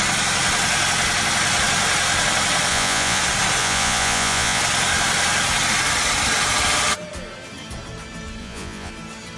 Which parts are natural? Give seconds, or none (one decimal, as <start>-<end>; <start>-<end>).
0.0-2.7; 3.2-3.6; 4.6-8.4; 8.9-9.4

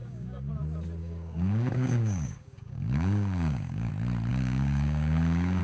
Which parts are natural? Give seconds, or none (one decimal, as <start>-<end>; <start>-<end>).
0.5-1.0; 3.9-4.3

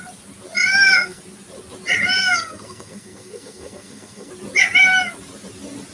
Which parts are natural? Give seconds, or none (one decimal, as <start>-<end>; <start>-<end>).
0.0-0.7; 1.2-2.2; 4.3-5.9

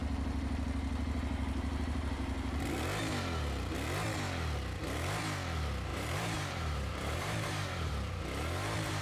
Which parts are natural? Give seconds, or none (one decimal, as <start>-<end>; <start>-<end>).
0.0-5.9; 8.1-9.0